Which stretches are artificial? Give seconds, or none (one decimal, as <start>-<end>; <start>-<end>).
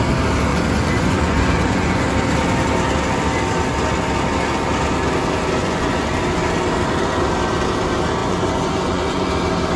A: 0.5-2.1; 5.6-6.1; 8.2-9.3